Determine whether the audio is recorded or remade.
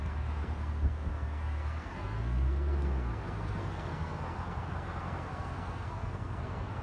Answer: remade